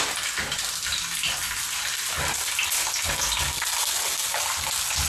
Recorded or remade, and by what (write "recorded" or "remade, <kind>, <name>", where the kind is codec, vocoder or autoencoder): recorded